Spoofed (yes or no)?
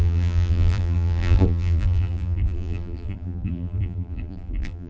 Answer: yes